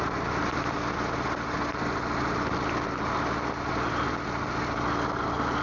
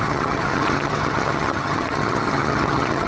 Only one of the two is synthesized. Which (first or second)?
second